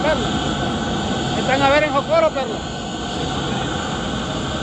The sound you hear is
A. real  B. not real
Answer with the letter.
A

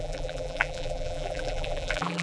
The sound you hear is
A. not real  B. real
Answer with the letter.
A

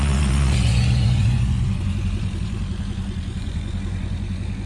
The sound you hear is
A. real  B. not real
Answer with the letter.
B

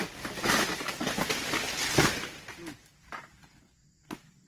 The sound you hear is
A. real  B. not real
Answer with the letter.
A